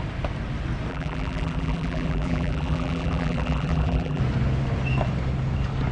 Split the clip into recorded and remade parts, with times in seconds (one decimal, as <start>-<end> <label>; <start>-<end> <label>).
0.0-0.9 recorded; 0.9-4.2 remade; 4.2-5.9 recorded